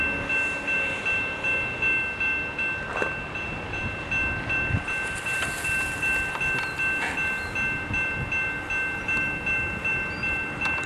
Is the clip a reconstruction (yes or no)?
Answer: no